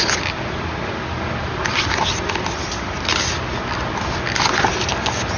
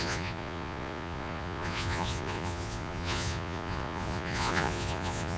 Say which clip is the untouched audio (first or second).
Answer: first